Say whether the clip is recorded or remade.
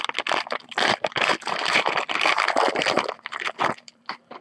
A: remade